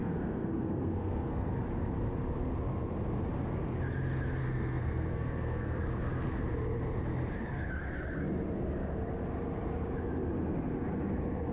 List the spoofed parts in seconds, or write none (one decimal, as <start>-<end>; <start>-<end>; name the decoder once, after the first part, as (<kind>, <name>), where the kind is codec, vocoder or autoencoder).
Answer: 0.0-1.5 (codec, SNAC); 4.4-5.8